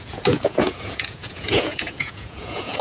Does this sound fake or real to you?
fake